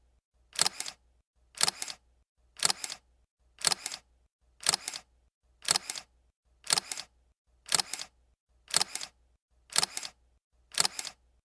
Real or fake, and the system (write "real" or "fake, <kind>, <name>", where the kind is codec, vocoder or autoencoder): real